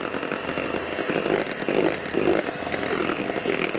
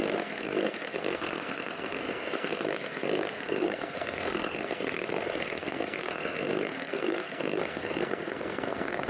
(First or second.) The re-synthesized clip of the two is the second